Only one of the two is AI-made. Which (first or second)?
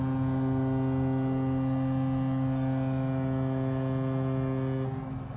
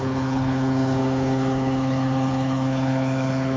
second